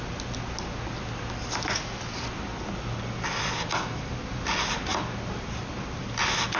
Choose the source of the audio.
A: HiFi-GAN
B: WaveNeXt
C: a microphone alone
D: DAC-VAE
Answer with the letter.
C